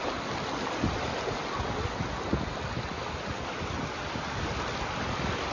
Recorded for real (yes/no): yes